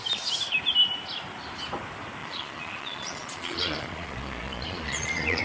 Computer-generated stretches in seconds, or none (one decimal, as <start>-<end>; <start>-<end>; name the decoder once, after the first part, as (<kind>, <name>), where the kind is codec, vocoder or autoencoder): 2.2-5.4 (vocoder, Vocos)